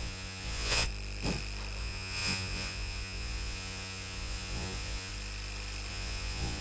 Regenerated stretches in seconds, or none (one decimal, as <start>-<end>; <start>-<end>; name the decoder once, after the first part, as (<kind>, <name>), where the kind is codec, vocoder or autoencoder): 0.0-0.9 (vocoder, Vocos); 1.8-5.1; 5.9-6.6